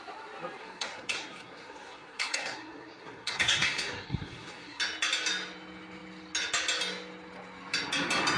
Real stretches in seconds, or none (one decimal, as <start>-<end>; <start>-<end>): 0.0-0.6; 4.8-8.4